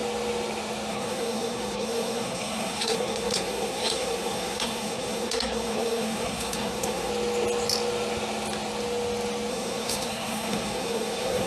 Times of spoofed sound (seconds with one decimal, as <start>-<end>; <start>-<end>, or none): 0.9-7.1; 9.5-11.5